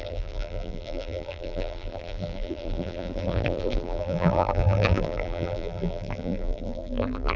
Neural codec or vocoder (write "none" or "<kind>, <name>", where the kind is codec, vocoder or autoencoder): vocoder, BigVGAN v2